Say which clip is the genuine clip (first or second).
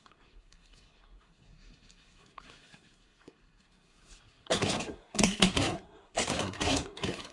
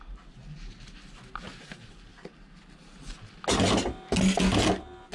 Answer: second